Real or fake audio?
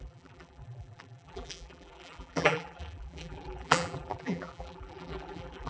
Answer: fake